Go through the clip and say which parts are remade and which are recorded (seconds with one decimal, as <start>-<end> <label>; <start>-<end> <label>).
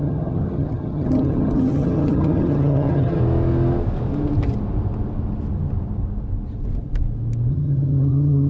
0.0-3.2 remade; 3.2-7.5 recorded; 7.5-8.5 remade